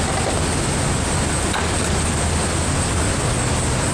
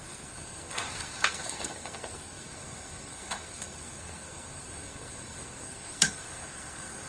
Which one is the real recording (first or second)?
first